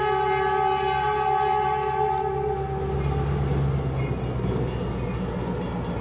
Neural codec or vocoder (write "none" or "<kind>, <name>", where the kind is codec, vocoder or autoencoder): none